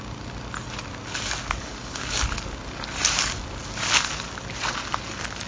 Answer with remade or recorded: recorded